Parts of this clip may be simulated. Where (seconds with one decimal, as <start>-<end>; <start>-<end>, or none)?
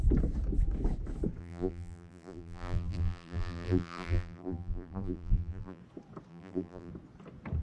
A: 1.4-5.8; 6.3-6.9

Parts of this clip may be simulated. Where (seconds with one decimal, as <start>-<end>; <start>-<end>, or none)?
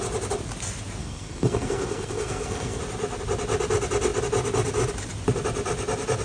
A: 1.0-2.8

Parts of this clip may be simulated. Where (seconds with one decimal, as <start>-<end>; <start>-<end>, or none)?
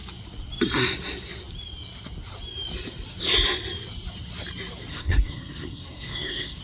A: 4.9-6.6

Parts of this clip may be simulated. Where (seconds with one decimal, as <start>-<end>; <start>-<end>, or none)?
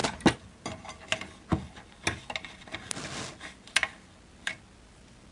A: none